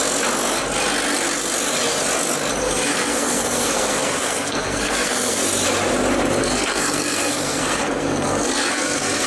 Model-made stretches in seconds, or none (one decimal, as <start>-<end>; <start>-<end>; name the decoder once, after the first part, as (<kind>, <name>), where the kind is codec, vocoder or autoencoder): 2.6-5.4 (codec, SNAC); 6.4-9.3